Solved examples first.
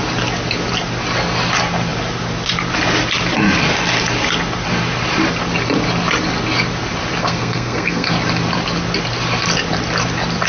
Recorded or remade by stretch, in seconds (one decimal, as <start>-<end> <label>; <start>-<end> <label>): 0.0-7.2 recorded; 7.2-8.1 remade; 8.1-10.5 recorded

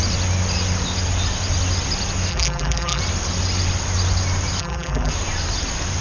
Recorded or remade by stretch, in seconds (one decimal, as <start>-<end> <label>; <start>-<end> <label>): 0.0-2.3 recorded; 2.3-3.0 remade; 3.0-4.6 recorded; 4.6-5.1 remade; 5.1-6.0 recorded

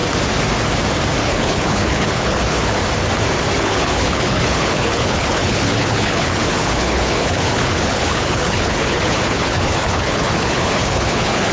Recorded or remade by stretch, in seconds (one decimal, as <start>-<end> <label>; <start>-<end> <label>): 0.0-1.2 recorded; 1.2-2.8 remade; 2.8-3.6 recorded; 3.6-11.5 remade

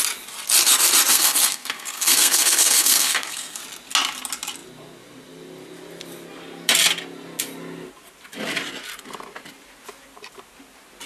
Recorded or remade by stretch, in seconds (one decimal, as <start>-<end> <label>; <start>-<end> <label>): 0.0-1.1 recorded; 1.1-3.6 remade; 3.6-11.1 recorded

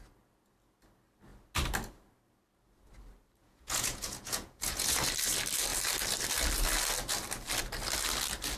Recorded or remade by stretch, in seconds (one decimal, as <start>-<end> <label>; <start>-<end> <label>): 0.0-3.4 recorded; 3.4-5.0 remade; 5.0-8.6 recorded

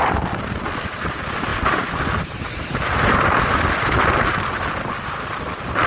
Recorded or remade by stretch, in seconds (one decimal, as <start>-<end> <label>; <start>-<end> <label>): 0.0-5.9 recorded

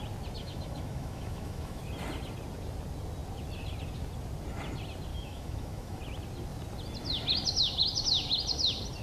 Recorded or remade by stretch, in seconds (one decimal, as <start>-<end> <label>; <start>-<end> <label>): 0.0-0.4 recorded; 0.4-1.8 remade; 1.8-5.1 recorded; 5.1-6.0 remade; 6.0-9.0 recorded

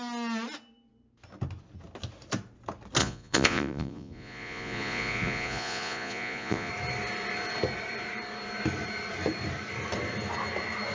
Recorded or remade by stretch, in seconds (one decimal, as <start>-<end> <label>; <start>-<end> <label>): 0.0-3.0 recorded; 3.0-6.7 remade; 6.7-10.9 recorded